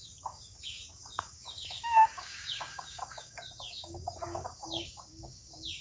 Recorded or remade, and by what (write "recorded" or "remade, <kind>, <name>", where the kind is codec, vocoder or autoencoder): remade, codec, DAC